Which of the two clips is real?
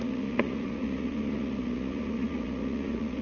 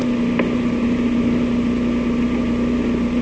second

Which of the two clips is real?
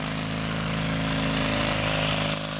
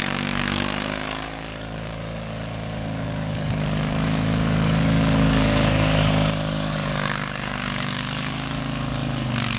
first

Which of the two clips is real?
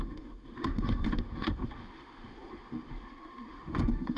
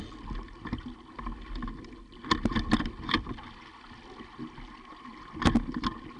second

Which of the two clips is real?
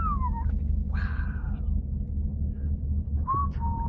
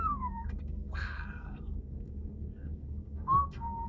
first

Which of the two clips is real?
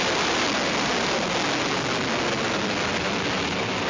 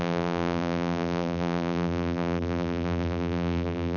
first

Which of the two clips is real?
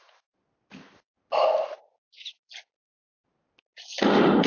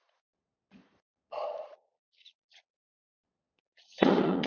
first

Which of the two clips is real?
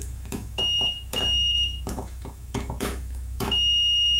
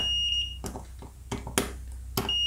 second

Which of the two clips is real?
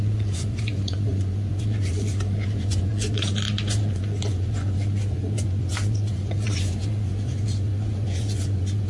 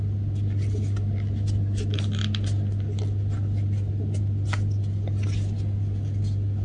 second